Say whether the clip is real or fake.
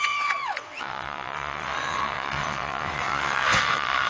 fake